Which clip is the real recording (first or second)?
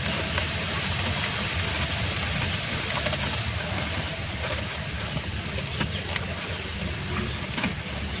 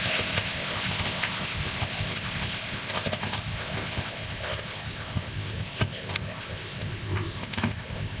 first